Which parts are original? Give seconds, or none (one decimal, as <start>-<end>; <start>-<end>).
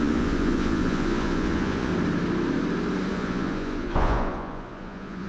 1.9-3.1